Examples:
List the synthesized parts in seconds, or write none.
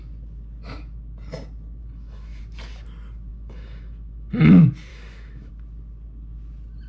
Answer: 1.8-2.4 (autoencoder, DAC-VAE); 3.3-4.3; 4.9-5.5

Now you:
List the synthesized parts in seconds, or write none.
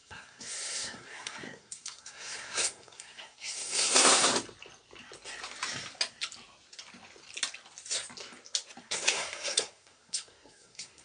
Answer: 0.0-4.3 (codec, SNAC); 8.8-11.0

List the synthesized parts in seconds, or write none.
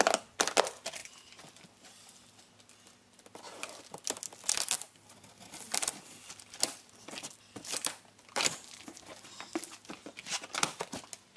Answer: none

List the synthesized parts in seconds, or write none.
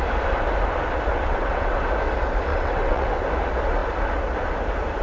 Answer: 1.1-1.7 (vocoder, WaveNeXt); 2.5-3.2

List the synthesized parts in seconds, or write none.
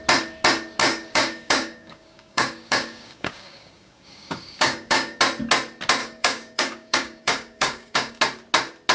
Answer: 0.8-5.2 (codec, DAC); 6.0-8.2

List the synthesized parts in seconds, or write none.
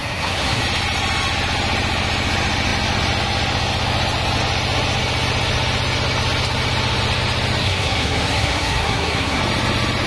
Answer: 0.0-0.6 (codec, SNAC); 7.6-9.4